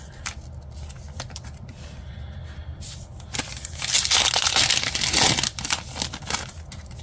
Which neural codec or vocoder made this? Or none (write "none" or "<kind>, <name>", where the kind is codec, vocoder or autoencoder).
none